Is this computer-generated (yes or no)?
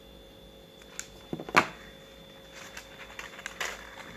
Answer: no